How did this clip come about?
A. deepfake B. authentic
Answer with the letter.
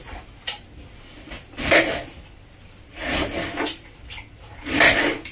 B